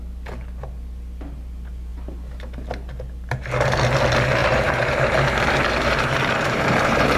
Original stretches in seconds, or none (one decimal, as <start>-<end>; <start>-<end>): 0.0-4.4